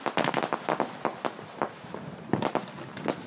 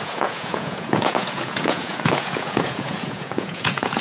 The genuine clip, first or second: first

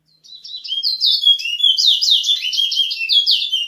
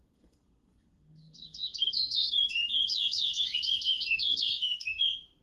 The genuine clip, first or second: first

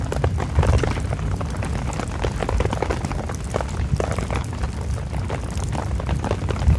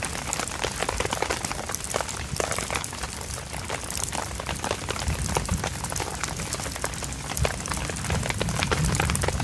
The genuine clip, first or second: first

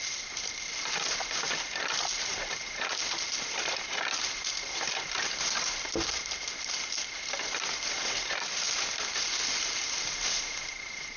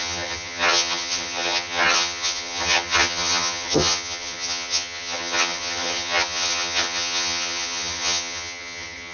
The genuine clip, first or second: first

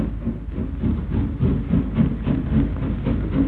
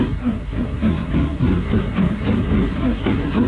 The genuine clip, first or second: first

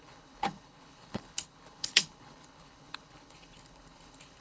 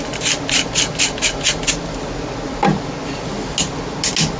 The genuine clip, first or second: second